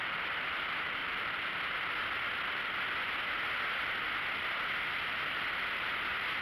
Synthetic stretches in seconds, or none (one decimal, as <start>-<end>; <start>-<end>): none